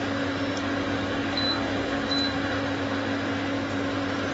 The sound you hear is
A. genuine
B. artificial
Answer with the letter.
A